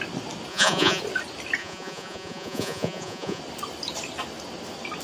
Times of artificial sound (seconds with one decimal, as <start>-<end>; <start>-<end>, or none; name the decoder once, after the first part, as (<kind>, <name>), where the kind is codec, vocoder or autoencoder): 0.5-1.0 (vocoder, Vocos); 1.6-3.4